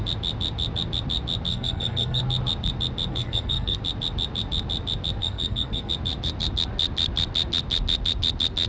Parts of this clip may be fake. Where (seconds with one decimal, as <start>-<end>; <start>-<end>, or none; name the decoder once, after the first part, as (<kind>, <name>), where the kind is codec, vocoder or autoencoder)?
1.5-2.2 (codec, SNAC); 3.1-3.8; 5.2-5.9